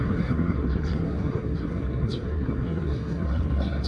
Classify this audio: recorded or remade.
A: remade